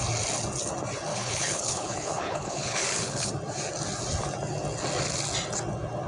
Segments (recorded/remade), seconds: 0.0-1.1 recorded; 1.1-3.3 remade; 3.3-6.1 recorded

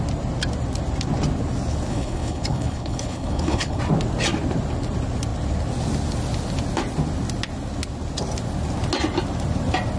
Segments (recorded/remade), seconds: 0.0-1.9 recorded; 1.9-3.8 remade; 3.8-10.0 recorded

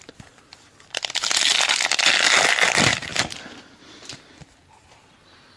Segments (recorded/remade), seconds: 0.0-5.6 recorded

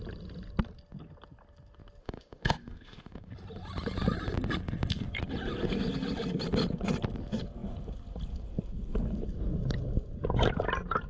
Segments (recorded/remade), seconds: 0.0-2.0 recorded; 2.0-3.3 remade; 3.3-11.1 recorded

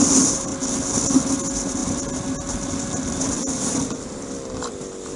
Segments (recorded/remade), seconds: 0.0-5.2 recorded

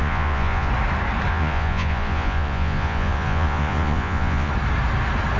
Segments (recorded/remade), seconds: 0.0-0.7 remade; 0.7-1.3 recorded; 1.3-4.5 remade; 4.5-5.4 recorded

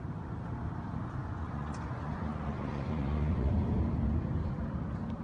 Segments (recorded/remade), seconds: 0.0-1.2 recorded; 1.2-3.5 remade; 3.5-5.2 recorded